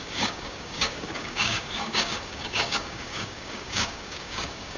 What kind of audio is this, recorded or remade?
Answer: remade